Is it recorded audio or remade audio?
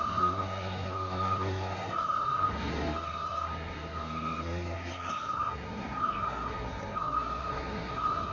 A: remade